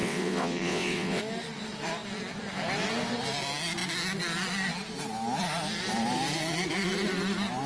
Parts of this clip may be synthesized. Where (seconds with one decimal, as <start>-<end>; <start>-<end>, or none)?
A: 0.0-1.2